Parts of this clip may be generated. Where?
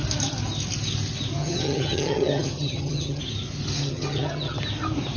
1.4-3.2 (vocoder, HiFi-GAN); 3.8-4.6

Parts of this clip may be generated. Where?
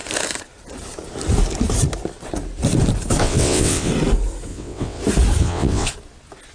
3.2-3.9 (vocoder, WaveNeXt); 4.5-5.0; 5.4-5.9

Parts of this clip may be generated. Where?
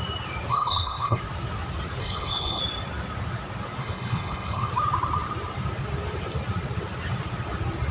0.5-1.2 (codec, HILCodec); 2.0-2.6; 3.8-4.7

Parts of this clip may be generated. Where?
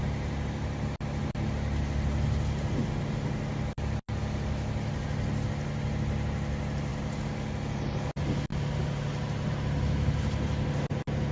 none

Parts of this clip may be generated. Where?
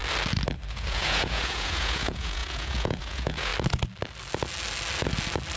0.7-3.5 (vocoder, Vocos)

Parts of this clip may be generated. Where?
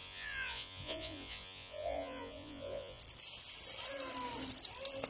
0.0-3.0 (vocoder, Vocos)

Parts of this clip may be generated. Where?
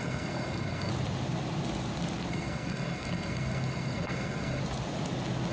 0.0-0.9 (codec, SNAC); 2.3-4.6